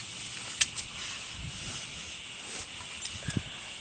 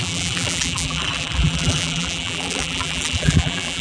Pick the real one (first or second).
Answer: first